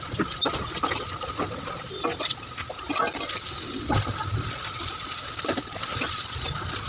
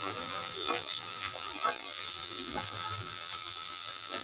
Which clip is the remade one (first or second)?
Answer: second